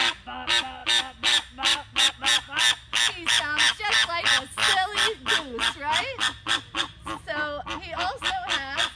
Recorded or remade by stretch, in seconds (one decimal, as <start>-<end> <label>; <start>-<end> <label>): 0.0-9.0 recorded